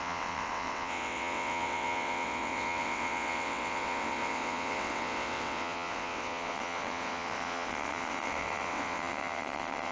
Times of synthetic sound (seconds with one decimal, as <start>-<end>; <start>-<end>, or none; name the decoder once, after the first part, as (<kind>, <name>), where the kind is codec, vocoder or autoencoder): 0.0-9.9 (vocoder, WaveNeXt)